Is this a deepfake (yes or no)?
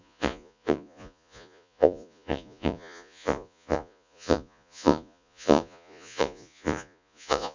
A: yes